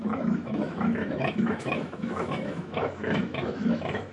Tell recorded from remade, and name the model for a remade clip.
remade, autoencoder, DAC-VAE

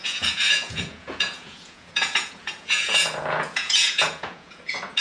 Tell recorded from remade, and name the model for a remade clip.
remade, vocoder, Vocos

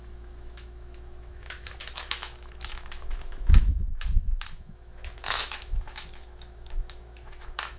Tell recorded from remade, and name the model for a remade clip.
remade, autoencoder, DAC-VAE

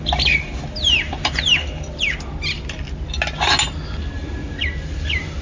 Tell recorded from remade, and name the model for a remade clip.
recorded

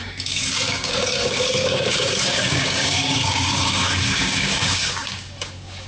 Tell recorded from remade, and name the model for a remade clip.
remade, codec, DAC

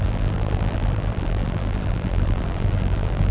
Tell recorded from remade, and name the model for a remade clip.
remade, vocoder, BigVGAN v2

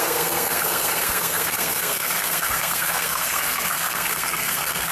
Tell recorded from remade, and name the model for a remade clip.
remade, codec, SNAC